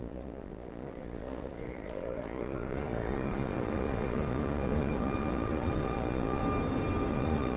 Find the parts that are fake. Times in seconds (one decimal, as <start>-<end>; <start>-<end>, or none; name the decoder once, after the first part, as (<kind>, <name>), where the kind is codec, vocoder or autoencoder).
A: 0.0-6.4 (vocoder, Vocos); 7.1-7.6